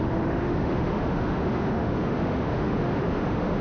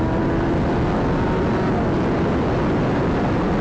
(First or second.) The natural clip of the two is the second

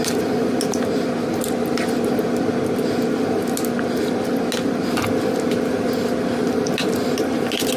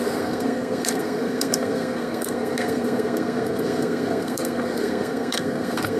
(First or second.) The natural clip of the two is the first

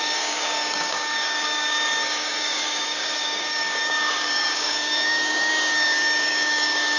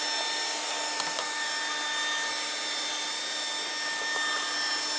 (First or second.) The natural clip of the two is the second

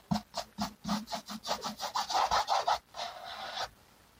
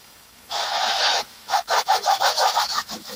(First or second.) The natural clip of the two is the first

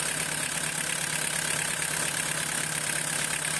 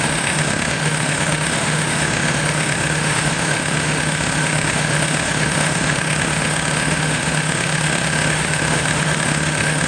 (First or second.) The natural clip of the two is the first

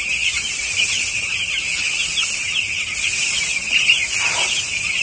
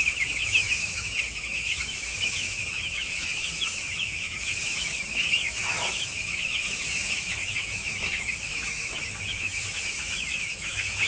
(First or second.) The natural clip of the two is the first